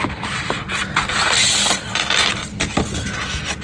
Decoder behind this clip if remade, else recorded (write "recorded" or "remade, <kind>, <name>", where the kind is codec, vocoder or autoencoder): recorded